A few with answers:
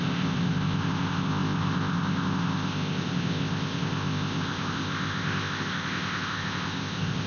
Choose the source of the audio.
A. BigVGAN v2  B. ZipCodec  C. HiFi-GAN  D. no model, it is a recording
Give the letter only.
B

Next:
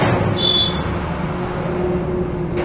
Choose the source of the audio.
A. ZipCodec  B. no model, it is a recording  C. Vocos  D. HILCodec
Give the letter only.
B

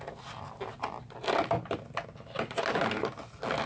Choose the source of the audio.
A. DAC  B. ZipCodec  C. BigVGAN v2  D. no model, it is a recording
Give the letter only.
D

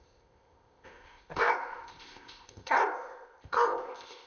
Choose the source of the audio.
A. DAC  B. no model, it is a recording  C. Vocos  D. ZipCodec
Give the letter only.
D